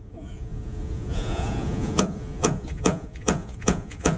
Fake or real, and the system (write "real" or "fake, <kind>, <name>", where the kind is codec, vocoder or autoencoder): fake, vocoder, Vocos